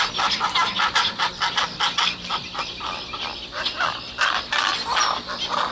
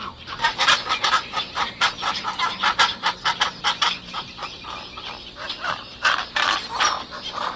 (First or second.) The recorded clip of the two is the first